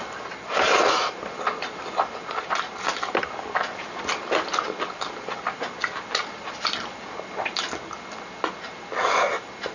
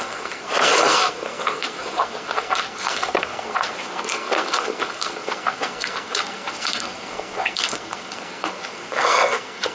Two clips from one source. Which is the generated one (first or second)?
second